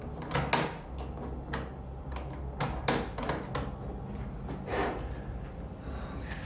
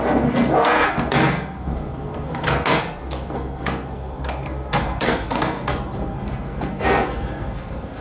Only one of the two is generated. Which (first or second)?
second